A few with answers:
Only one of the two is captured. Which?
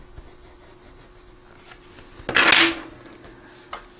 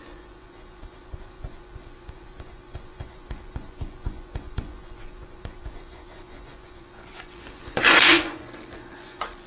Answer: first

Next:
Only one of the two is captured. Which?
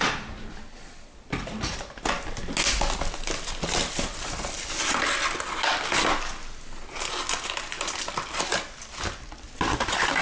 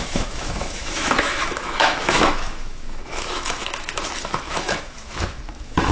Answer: first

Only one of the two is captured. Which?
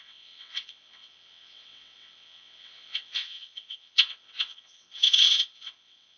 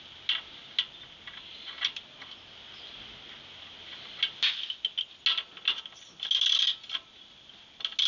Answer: second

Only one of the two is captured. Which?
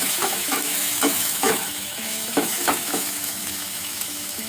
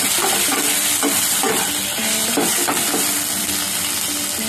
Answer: second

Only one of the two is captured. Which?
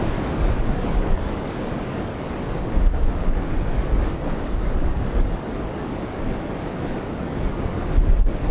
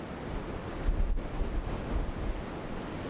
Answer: second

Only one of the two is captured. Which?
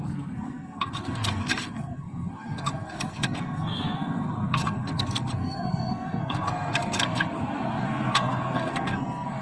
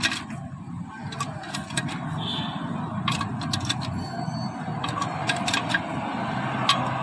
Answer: second